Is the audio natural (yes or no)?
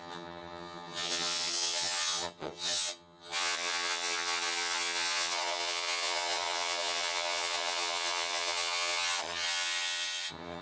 no